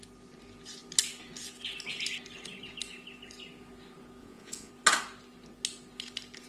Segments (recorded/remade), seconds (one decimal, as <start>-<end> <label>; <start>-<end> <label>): 0.0-4.2 recorded; 4.2-4.7 remade; 4.7-6.5 recorded